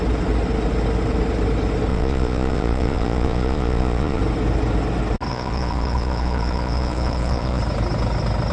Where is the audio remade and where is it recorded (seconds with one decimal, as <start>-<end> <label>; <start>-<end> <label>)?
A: 0.0-1.9 recorded; 1.9-4.2 remade; 4.2-5.3 recorded; 5.3-7.6 remade; 7.6-8.5 recorded